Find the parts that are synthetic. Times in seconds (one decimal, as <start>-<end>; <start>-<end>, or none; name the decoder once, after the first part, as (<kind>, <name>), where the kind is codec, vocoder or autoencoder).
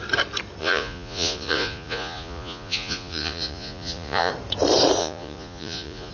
0.6-4.3 (vocoder, Vocos); 5.0-6.1